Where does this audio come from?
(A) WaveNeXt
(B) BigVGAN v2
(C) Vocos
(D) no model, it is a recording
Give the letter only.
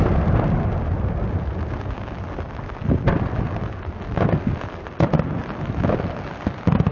D